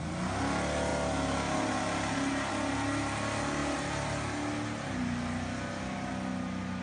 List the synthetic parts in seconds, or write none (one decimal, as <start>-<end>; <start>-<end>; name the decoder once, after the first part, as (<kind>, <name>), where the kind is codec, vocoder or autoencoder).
none

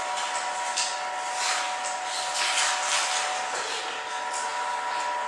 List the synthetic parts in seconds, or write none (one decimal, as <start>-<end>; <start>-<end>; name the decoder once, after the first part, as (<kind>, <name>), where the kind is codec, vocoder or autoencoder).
none

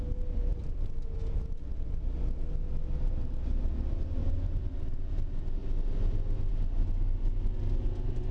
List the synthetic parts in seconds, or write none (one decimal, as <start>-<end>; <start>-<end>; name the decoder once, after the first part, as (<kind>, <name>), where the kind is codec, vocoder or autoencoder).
0.5-1.6 (vocoder, BigVGAN v2); 4.2-5.1